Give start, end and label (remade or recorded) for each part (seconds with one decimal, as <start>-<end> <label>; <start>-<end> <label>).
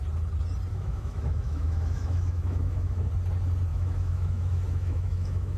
0.0-0.7 recorded; 0.7-3.1 remade; 3.1-3.7 recorded; 3.7-5.6 remade